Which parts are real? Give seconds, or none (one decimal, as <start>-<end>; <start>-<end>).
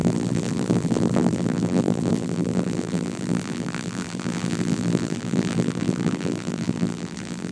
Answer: none